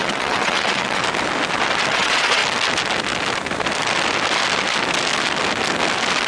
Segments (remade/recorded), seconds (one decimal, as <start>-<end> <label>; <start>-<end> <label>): 0.0-1.0 remade; 1.0-1.9 recorded; 1.9-2.4 remade; 2.4-6.3 recorded